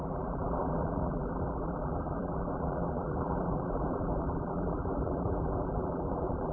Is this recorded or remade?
remade